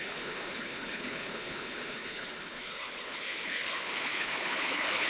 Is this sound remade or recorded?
remade